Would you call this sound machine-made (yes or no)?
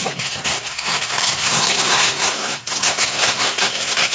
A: yes